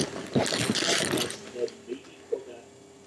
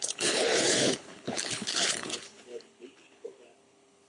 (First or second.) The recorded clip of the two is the first